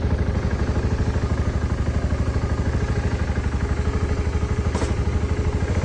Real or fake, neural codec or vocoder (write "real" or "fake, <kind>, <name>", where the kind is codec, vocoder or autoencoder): real